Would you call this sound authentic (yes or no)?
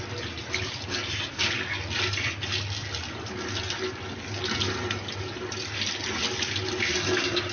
yes